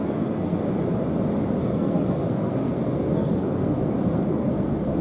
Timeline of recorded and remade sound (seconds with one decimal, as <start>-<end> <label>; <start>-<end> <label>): 0.0-0.6 remade; 0.6-1.6 recorded; 1.6-5.0 remade